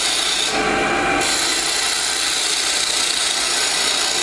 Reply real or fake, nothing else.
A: real